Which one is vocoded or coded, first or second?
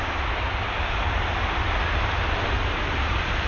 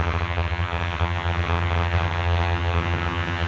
second